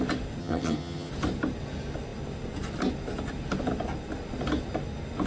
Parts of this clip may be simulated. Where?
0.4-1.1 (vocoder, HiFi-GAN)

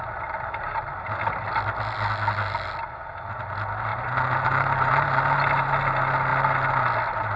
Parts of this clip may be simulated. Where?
none

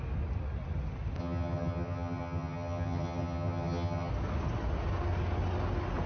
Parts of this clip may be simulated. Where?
1.2-4.1 (vocoder, HiFi-GAN)

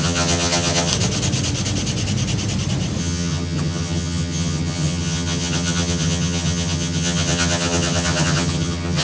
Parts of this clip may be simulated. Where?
0.0-0.9 (vocoder, HiFi-GAN); 3.0-9.0

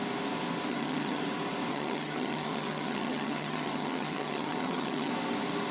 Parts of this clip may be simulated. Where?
0.7-1.2 (vocoder, HiFi-GAN); 1.7-5.1

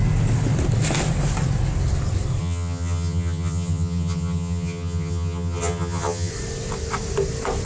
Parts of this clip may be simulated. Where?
2.4-6.3 (vocoder, HiFi-GAN)

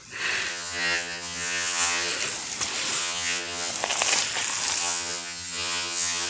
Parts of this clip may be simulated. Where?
0.5-2.1 (vocoder, HiFi-GAN); 3.0-3.7; 4.8-6.3